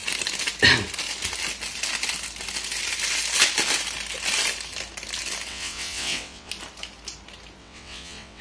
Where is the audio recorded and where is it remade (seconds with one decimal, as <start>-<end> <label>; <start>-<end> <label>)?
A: 0.0-5.5 recorded; 5.5-6.5 remade; 6.5-7.6 recorded; 7.6-8.4 remade